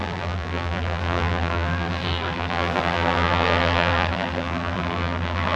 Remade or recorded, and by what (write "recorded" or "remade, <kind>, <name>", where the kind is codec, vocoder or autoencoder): remade, vocoder, BigVGAN v2